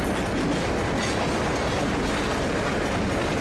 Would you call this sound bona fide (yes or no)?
yes